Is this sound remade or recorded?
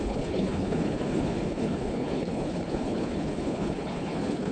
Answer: remade